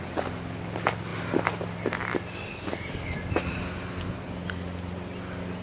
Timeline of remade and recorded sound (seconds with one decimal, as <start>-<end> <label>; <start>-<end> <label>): 0.0-5.6 recorded